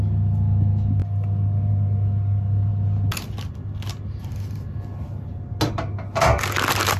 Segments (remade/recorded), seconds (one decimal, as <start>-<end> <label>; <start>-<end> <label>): 0.0-7.0 recorded